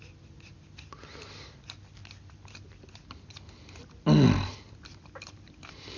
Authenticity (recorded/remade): recorded